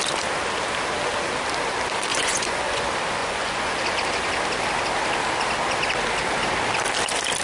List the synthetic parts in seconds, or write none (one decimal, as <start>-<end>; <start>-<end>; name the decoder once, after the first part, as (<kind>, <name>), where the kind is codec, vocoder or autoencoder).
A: 2.1-2.8 (vocoder, Vocos); 3.2-3.8